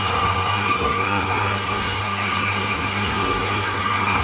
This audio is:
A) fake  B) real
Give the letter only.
A